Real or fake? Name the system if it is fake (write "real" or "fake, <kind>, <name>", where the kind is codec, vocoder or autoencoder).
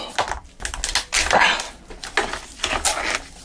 real